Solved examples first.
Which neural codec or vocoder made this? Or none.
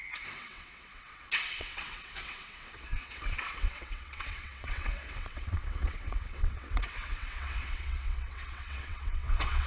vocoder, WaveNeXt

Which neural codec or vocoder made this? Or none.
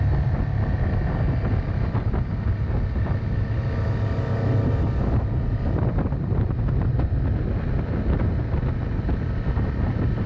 none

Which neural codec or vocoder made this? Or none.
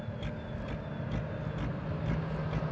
none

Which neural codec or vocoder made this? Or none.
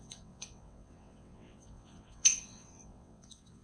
vocoder, WaveNeXt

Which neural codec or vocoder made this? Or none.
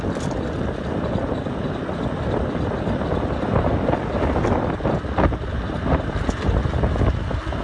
none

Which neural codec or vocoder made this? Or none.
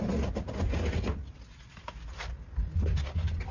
none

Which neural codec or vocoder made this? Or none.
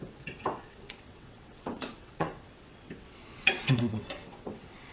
vocoder, WaveNeXt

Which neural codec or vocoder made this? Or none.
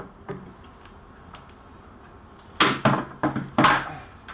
none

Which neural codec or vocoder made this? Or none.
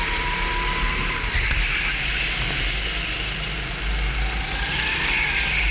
none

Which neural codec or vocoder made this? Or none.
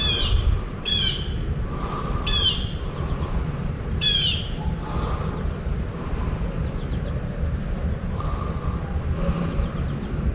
none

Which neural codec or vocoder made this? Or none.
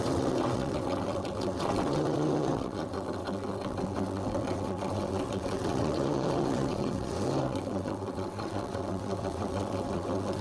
vocoder, WaveNeXt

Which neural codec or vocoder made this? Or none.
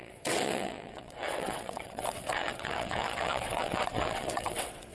vocoder, WaveNeXt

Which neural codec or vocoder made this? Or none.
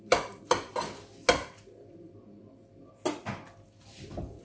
none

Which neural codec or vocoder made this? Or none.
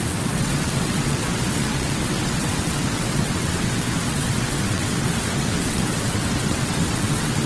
vocoder, WaveNeXt